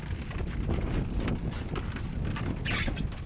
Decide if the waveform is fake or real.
real